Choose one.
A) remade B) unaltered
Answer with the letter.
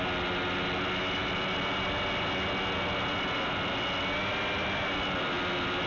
B